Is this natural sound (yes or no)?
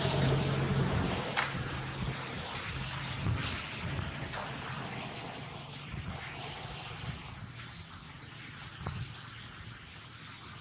yes